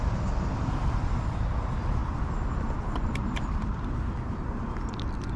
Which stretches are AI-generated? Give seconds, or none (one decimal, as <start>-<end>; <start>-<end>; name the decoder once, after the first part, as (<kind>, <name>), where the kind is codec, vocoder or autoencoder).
none